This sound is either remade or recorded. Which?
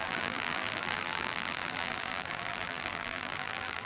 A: remade